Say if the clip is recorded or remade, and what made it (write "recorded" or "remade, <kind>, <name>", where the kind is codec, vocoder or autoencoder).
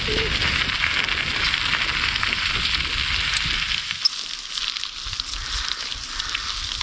recorded